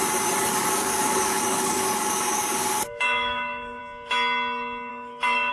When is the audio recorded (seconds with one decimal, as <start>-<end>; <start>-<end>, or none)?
0.0-0.5; 3.8-4.9